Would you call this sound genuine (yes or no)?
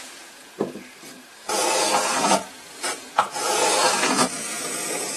no